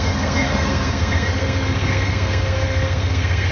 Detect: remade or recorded remade